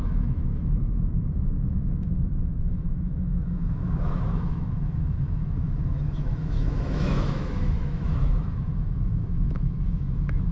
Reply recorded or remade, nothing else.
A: remade